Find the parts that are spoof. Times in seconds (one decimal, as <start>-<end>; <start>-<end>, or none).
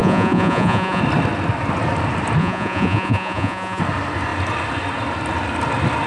0.0-1.0; 2.4-3.8